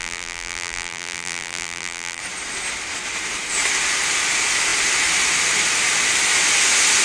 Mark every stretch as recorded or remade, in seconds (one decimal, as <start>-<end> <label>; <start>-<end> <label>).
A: 0.0-2.2 remade; 2.2-7.0 recorded